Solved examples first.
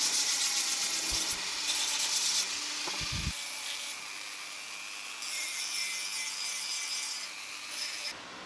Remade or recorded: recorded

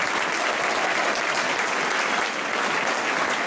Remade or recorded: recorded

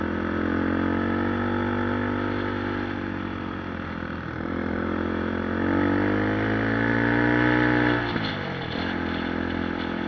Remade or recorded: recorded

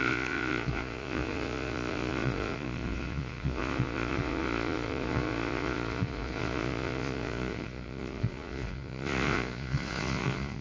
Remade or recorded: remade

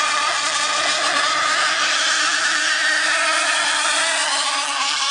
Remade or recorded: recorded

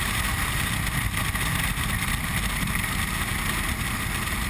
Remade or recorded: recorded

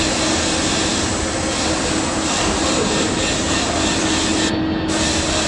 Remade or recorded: recorded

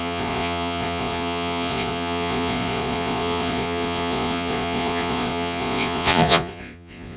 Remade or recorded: remade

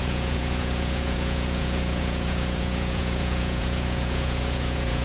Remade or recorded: remade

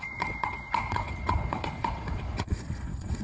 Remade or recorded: remade